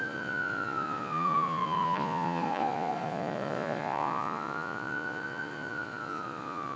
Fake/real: fake